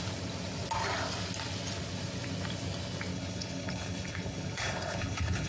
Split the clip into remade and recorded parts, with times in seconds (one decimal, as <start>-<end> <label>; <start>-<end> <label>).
0.0-3.1 recorded; 3.1-5.5 remade